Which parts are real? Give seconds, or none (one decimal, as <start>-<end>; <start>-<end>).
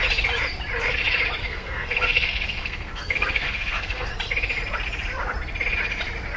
0.0-1.4; 4.1-6.4